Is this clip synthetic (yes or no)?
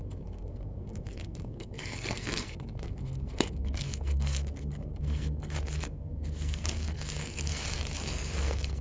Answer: yes